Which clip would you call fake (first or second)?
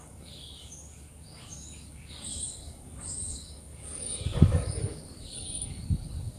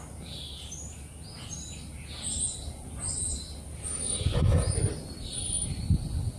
first